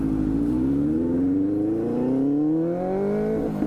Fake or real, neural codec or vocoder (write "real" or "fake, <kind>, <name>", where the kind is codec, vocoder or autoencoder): real